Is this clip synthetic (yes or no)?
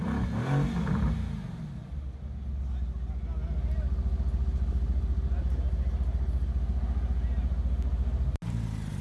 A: no